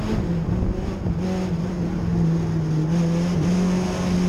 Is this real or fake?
real